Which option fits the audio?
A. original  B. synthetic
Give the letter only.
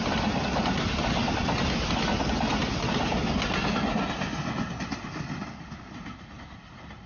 A